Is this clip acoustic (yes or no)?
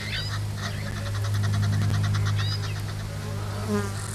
yes